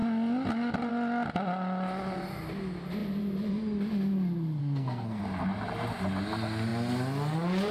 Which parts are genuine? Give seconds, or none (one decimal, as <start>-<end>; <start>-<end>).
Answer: 0.0-4.6; 5.2-7.7